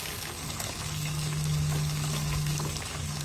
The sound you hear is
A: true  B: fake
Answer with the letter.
B